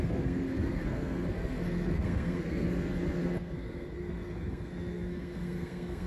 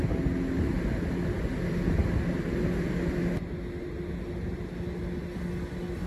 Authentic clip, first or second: second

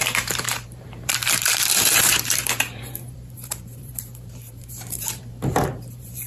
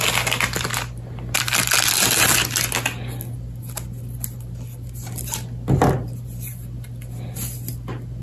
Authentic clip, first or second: second